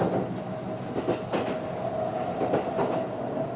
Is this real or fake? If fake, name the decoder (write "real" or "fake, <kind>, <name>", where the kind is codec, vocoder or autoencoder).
real